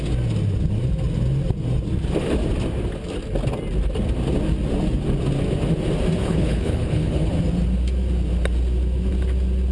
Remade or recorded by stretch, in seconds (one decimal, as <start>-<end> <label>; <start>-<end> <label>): 0.0-6.2 recorded; 6.2-7.3 remade; 7.3-9.7 recorded